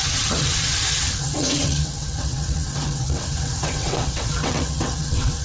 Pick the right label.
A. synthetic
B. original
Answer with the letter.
A